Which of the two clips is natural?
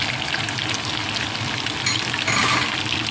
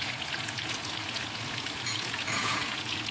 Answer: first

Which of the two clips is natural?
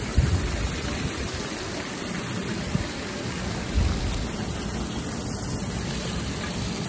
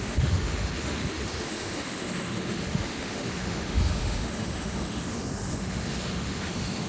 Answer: first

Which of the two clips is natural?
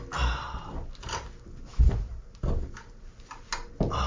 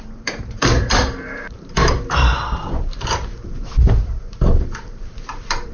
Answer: first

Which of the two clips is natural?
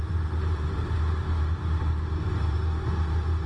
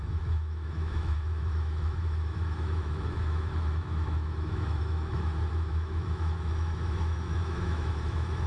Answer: first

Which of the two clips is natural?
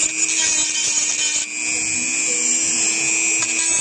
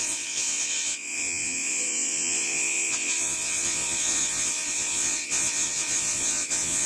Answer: first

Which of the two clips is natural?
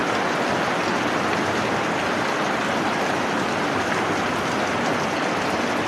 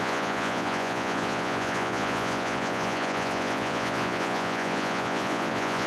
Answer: first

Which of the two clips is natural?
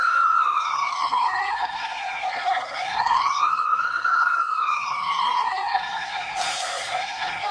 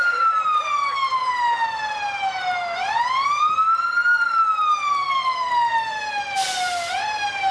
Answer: second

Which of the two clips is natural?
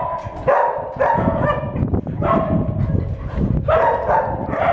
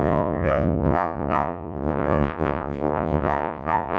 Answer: first